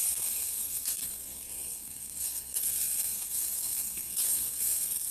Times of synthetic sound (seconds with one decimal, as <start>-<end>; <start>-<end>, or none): 0.0-5.1